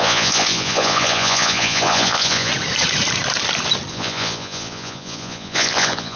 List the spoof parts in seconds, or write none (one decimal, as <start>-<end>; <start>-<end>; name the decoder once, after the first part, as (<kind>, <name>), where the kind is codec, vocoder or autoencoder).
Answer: 0.0-2.5 (vocoder, Vocos); 3.9-6.2